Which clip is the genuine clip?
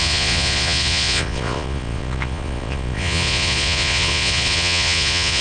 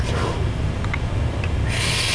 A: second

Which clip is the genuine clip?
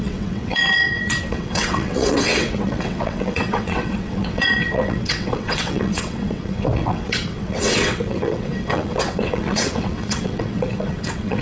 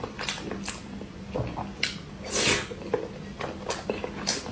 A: second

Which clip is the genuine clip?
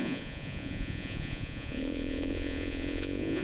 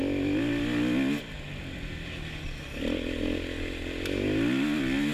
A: second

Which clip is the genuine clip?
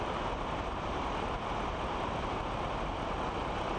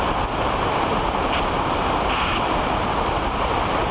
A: first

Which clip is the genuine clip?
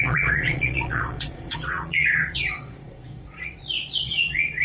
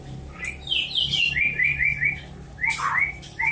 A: second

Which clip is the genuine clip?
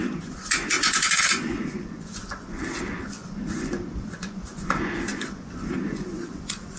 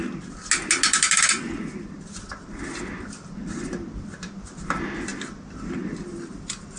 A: second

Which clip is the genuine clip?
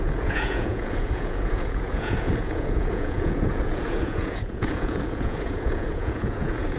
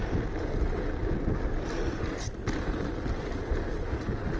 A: second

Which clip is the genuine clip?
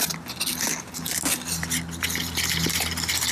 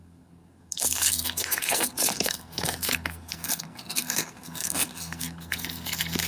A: first